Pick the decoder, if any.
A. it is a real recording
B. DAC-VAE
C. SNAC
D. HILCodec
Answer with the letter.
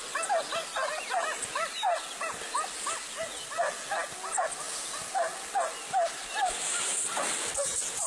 A